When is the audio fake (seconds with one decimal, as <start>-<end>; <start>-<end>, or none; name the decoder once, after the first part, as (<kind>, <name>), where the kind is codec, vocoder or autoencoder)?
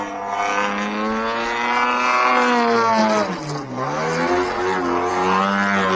none